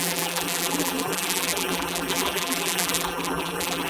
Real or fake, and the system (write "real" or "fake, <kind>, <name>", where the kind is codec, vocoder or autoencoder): fake, vocoder, BigVGAN v2